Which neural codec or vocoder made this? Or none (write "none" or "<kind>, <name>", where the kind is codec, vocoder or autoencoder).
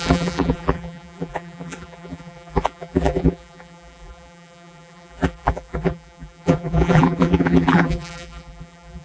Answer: vocoder, BigVGAN v2